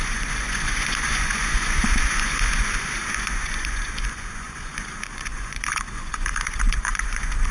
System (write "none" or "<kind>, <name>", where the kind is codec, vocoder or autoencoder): vocoder, Vocos